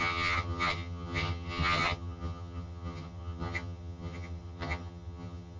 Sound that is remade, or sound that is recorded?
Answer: remade